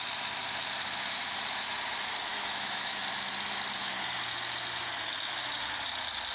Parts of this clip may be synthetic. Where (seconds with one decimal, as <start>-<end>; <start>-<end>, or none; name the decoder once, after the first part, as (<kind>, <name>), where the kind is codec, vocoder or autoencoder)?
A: 2.3-3.0 (autoencoder, DAC-VAE)